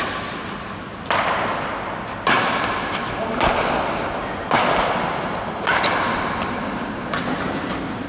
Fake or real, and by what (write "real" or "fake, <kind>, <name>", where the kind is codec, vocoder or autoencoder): real